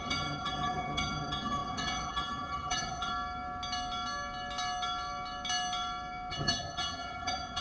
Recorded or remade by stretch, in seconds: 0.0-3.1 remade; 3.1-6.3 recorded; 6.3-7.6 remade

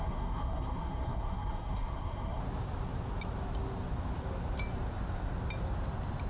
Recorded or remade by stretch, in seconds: 0.0-2.4 remade; 2.4-6.3 recorded

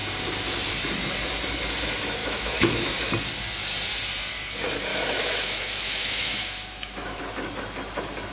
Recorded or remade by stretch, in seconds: 0.0-2.2 recorded; 2.2-2.9 remade; 2.9-4.9 recorded; 4.9-7.2 remade; 7.2-8.3 recorded

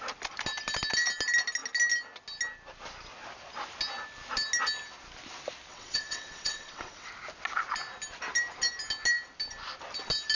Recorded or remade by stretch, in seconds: 0.0-5.7 recorded; 5.7-7.1 remade; 7.1-10.3 recorded

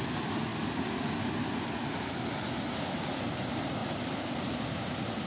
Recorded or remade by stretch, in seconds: 0.0-5.3 recorded

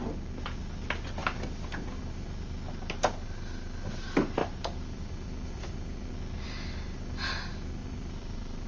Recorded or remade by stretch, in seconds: 0.0-4.4 recorded; 4.4-6.1 remade; 6.1-7.8 recorded; 7.8-8.7 remade